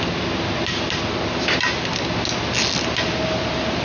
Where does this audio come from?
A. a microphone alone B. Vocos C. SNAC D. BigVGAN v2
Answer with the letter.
A